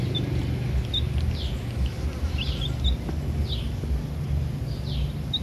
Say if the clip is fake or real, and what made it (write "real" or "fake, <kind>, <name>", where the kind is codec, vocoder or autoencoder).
real